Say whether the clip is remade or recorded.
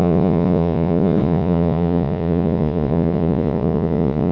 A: remade